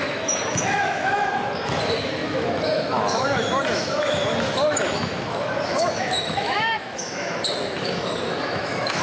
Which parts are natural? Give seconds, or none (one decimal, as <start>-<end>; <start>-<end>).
none